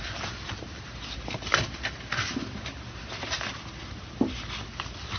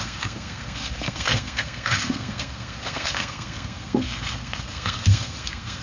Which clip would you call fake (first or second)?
second